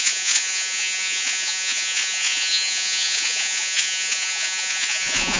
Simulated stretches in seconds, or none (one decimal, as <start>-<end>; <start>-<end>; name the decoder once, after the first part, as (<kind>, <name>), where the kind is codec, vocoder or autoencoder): 0.0-5.4 (vocoder, Vocos)